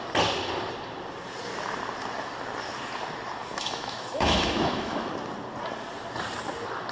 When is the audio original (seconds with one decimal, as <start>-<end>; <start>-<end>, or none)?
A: 0.0-3.4; 5.1-6.9